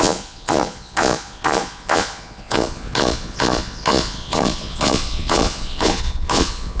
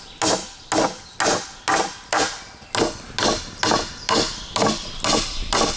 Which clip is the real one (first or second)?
second